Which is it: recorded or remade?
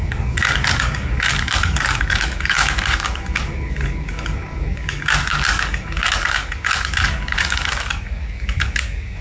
remade